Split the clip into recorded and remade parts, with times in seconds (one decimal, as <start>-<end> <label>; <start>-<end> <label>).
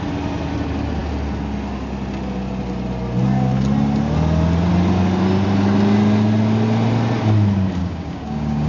0.0-7.8 recorded; 7.8-8.7 remade